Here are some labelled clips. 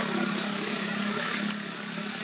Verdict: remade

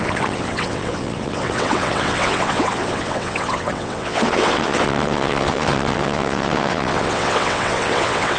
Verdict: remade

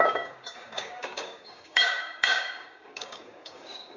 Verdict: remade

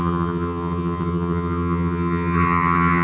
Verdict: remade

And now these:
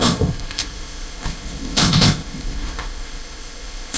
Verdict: remade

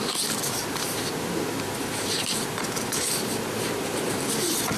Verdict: remade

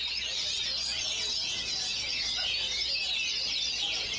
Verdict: remade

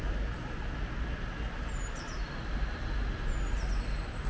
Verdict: recorded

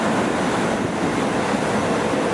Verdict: recorded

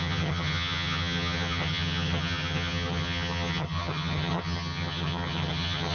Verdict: remade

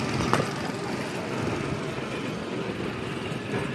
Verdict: recorded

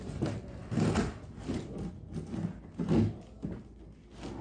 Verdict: recorded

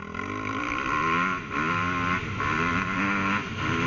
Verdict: recorded